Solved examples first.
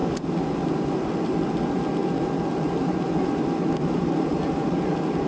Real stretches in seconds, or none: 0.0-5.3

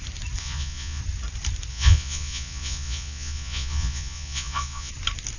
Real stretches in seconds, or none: 0.0-0.4; 1.0-1.7; 4.9-5.4

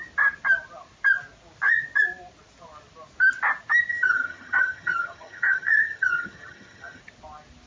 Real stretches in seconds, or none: 0.0-3.9; 7.0-7.7

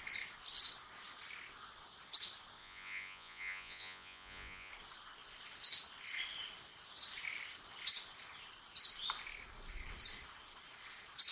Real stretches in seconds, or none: 0.0-2.6; 4.7-11.3

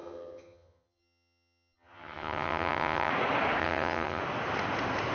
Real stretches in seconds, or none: 3.1-3.6; 4.2-5.1